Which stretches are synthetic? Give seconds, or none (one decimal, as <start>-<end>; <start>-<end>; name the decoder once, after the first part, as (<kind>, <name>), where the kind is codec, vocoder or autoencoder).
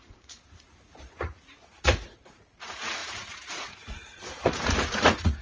0.0-5.4 (vocoder, Vocos)